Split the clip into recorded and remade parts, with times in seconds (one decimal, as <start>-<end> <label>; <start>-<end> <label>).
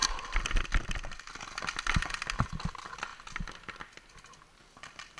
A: 0.0-5.2 recorded